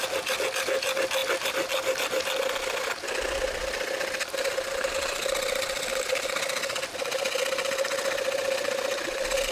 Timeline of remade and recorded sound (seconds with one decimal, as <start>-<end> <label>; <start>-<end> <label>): 0.0-9.5 recorded